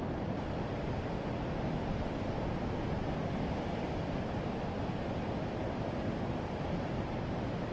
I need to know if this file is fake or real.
real